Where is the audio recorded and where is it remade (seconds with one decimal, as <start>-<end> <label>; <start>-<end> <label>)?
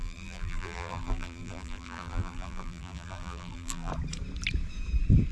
0.0-3.9 remade; 3.9-5.3 recorded